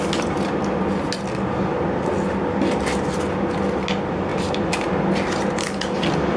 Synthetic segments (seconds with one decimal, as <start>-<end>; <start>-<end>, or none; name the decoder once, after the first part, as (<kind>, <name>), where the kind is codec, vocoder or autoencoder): 4.3-5.0 (vocoder, BigVGAN v2)